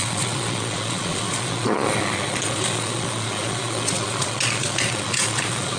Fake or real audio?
fake